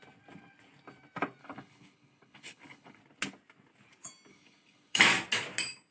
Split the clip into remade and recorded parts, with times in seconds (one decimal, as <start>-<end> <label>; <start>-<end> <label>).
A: 0.0-1.4 recorded; 1.4-3.0 remade; 3.0-4.3 recorded; 4.3-5.0 remade; 5.0-5.9 recorded